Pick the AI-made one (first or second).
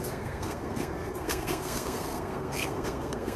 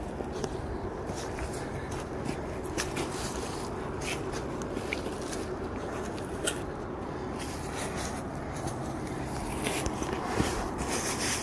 first